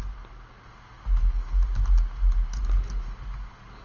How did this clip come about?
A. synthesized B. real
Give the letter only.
B